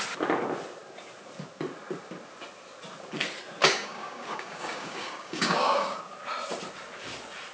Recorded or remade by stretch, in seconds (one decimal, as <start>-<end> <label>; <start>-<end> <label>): 0.0-3.6 recorded; 3.6-6.0 remade; 6.0-7.5 recorded

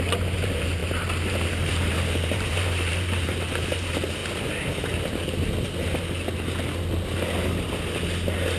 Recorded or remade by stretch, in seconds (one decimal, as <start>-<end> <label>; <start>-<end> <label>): 0.0-4.2 remade; 4.2-8.6 recorded

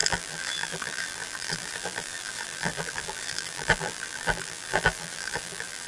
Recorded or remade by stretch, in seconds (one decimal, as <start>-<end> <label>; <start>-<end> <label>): 0.0-5.9 remade

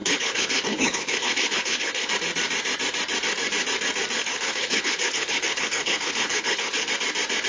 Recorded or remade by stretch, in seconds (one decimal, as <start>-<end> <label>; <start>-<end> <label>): 0.0-2.1 remade; 2.1-4.2 recorded; 4.2-6.9 remade; 6.9-7.5 recorded

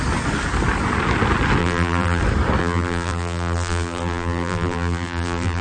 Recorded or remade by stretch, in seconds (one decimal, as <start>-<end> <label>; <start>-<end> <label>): 0.0-1.6 recorded; 1.6-2.2 remade; 2.2-2.6 recorded; 2.6-5.6 remade

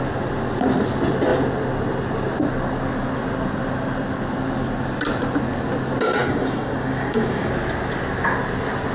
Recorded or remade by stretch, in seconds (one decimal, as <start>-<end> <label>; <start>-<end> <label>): 0.0-6.2 recorded; 6.2-7.5 remade; 7.5-8.9 recorded

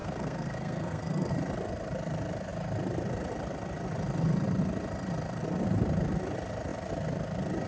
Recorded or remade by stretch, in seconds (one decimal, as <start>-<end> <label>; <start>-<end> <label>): 0.0-1.3 remade; 1.3-7.7 recorded